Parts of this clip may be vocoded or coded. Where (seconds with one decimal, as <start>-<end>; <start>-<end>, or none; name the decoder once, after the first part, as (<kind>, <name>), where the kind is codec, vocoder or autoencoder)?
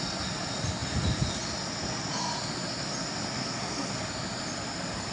3.4-3.9 (codec, SNAC)